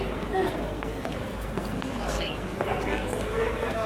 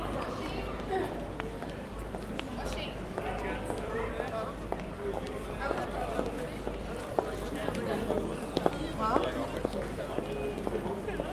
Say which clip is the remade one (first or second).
first